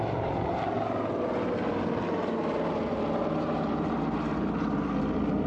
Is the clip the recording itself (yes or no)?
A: yes